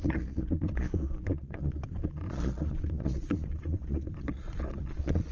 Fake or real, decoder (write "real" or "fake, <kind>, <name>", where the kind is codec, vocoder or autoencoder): fake, vocoder, Vocos